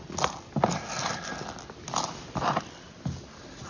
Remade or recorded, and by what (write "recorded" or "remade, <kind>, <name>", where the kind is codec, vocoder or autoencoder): recorded